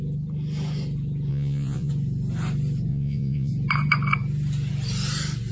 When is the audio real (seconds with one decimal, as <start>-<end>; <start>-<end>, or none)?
0.0-1.3; 1.9-2.9; 3.5-5.5